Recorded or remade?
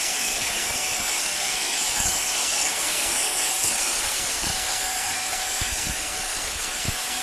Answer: remade